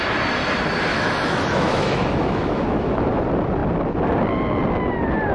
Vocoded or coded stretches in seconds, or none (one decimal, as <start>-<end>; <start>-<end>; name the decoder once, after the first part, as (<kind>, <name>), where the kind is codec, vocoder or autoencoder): 0.9-3.2 (autoencoder, DAC-VAE)